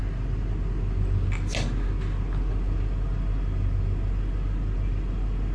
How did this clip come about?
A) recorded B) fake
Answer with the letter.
A